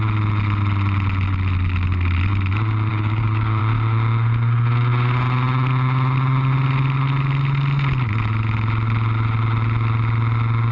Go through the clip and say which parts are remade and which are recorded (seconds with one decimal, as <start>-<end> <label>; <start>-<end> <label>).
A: 0.0-2.9 recorded; 2.9-3.6 remade; 3.6-10.7 recorded